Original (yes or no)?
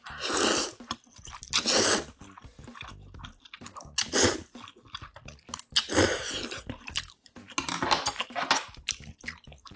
yes